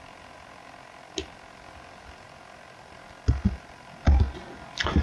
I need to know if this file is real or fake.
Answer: real